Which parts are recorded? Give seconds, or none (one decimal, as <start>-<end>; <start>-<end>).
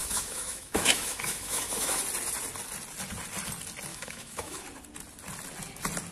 2.0-3.9; 4.6-6.1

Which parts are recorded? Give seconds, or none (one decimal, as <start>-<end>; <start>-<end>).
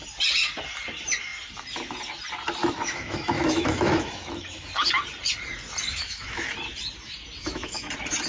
0.0-2.6; 4.7-5.9; 6.5-7.4; 7.9-8.3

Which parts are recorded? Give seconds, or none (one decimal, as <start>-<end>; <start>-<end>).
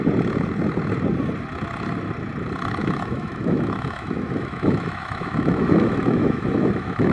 0.0-2.8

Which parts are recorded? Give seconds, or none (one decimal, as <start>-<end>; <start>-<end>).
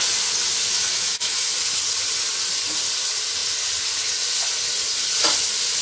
0.0-0.7; 1.5-5.8